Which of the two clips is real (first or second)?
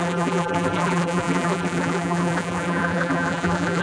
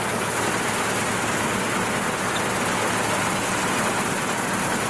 second